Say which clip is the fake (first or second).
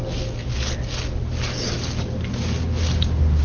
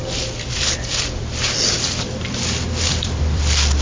second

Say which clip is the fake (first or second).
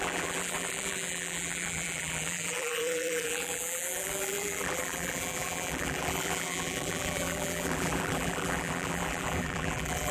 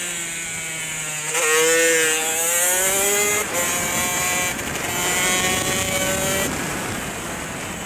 first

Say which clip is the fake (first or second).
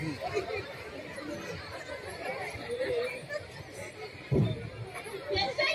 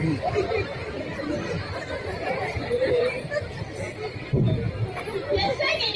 second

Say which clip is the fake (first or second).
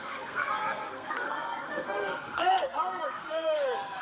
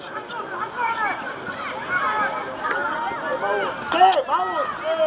first